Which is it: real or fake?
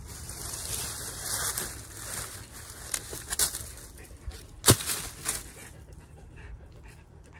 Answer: real